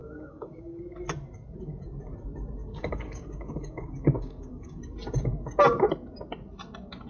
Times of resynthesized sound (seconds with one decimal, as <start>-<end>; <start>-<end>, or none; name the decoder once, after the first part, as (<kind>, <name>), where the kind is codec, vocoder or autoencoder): 0.0-0.8 (codec, DAC); 2.6-4.8